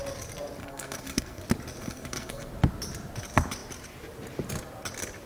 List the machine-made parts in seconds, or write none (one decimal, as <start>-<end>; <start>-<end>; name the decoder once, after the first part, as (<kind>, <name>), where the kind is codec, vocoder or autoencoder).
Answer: 0.6-1.4 (codec, SNAC); 1.8-2.5